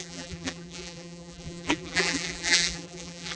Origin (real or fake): fake